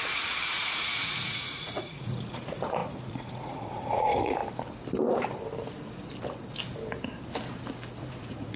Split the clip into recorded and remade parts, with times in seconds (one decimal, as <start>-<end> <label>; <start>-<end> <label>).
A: 0.0-4.4 remade; 4.4-8.0 recorded; 8.0-8.6 remade